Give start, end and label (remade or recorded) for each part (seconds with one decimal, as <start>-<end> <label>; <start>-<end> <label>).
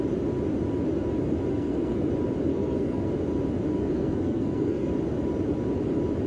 0.0-1.5 recorded; 1.5-2.1 remade; 2.1-2.5 recorded; 2.5-3.1 remade; 3.1-3.8 recorded; 3.8-4.9 remade; 4.9-6.3 recorded